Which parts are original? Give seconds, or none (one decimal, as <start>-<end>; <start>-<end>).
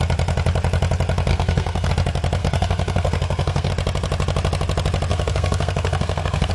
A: 0.0-1.3; 1.9-2.4; 3.7-5.1